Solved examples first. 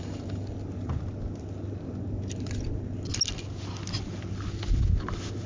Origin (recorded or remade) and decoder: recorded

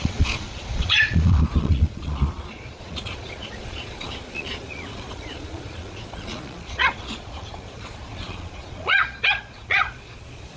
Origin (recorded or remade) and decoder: remade, vocoder, Vocos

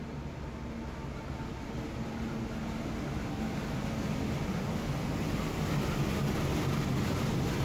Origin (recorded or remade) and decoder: recorded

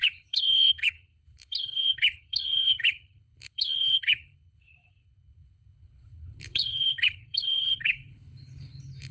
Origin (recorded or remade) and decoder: remade, codec, HILCodec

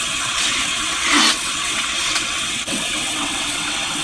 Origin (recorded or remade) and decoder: remade, vocoder, WaveNeXt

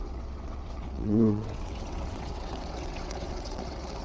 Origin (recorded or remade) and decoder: remade, vocoder, WaveNeXt